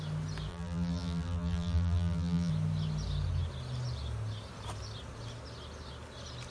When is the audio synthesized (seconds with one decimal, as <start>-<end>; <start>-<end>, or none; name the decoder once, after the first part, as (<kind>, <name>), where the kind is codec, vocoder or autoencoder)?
0.5-2.5 (vocoder, BigVGAN v2)